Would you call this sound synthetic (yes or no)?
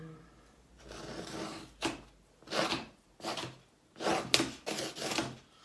no